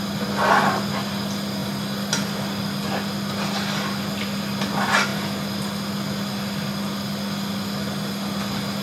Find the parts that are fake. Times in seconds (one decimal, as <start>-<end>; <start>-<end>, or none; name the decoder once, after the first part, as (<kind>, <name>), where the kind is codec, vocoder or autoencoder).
none